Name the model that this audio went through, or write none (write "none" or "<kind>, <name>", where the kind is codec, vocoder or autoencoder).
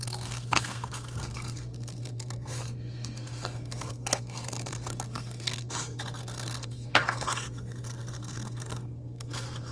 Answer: codec, SNAC